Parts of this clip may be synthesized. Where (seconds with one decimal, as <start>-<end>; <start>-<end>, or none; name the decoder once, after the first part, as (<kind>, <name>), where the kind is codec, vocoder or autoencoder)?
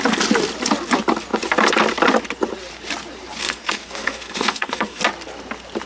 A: 3.4-5.0 (codec, SNAC)